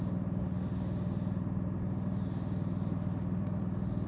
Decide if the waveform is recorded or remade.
recorded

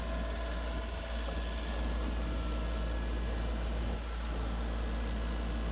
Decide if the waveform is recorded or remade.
recorded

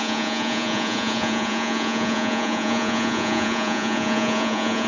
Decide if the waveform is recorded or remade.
remade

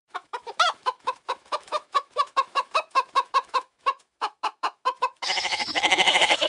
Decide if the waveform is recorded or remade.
remade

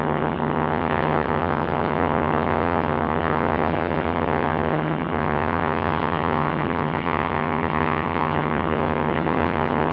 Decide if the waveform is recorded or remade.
remade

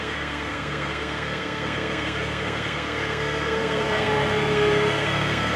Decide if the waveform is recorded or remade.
remade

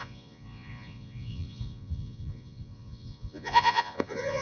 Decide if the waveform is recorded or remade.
remade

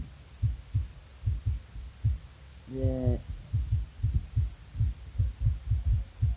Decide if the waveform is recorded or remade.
recorded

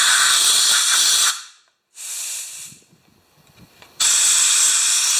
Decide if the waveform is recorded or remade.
remade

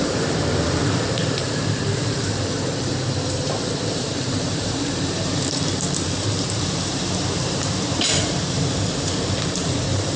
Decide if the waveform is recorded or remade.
remade